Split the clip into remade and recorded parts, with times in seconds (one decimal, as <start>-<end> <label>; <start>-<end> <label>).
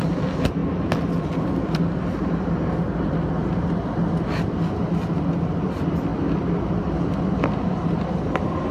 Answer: 0.0-8.7 recorded